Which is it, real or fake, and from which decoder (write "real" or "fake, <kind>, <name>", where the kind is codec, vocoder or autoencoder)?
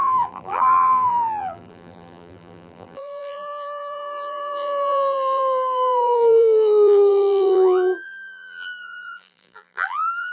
fake, vocoder, BigVGAN v2